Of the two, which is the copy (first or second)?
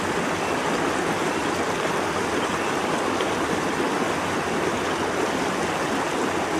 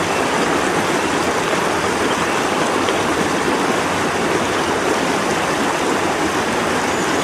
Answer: second